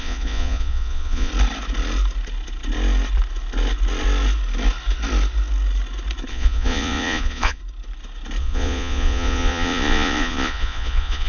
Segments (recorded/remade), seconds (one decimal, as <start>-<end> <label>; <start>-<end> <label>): 0.0-1.3 remade; 1.3-6.3 recorded; 6.3-7.6 remade; 7.6-8.4 recorded; 8.4-11.3 remade